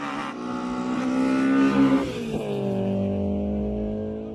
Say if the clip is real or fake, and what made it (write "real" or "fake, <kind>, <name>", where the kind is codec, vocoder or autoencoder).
real